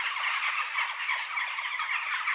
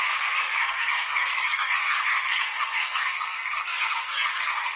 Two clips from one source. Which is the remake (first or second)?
second